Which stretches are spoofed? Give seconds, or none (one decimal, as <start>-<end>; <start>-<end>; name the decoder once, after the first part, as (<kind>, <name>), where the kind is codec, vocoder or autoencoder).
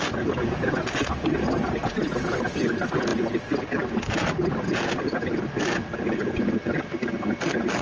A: none